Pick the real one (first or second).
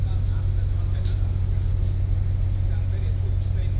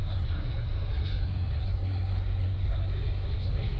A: first